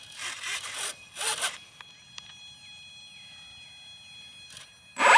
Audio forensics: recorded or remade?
recorded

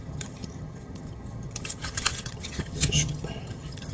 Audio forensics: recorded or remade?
remade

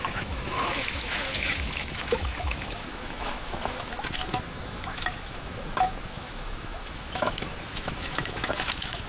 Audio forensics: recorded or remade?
remade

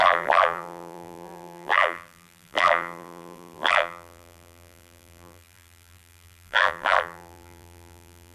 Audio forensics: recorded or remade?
remade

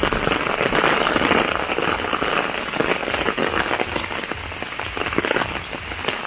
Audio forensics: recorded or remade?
recorded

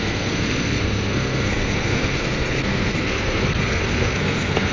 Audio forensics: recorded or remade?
remade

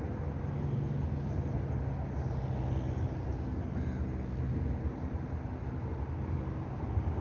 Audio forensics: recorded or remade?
recorded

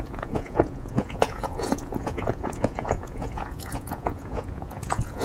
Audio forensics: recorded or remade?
remade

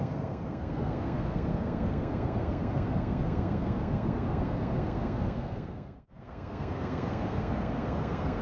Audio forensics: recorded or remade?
remade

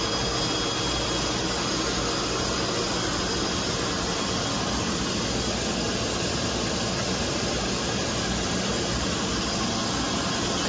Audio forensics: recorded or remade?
recorded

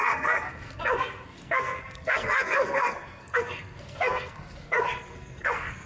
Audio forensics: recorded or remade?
remade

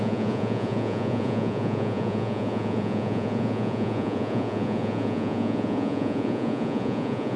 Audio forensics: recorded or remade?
remade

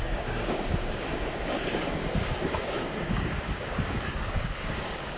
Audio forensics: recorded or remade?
remade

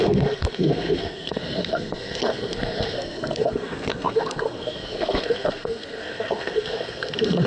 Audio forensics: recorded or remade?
remade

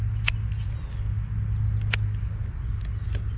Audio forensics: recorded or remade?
recorded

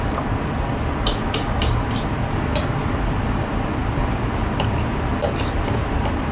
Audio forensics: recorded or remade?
recorded